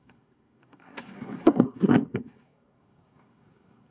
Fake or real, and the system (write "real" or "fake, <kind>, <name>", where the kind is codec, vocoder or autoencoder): fake, codec, SNAC